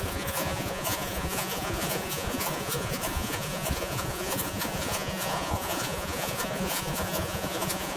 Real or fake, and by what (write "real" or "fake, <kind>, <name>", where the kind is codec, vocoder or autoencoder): fake, vocoder, Vocos